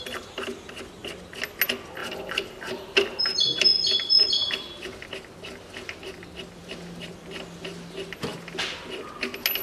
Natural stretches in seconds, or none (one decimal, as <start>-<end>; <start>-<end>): 0.0-2.0; 3.2-6.6; 7.1-9.6